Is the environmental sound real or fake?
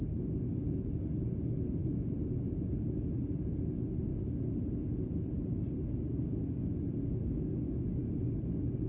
real